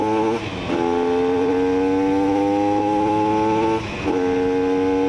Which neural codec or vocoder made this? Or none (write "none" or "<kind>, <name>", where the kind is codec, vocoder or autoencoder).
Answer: none